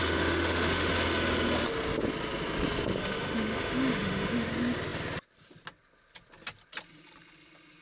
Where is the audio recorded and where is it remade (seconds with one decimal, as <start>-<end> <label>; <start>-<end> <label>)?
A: 0.0-0.9 remade; 0.9-3.0 recorded; 3.0-4.5 remade; 4.5-7.8 recorded